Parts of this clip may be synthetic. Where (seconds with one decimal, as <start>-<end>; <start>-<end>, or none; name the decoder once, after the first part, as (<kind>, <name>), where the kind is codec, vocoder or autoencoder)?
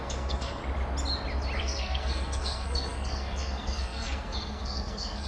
0.0-0.6 (codec, SNAC); 1.6-5.3